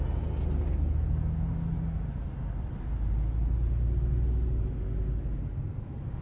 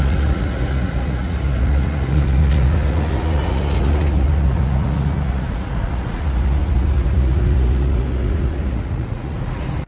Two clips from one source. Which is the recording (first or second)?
first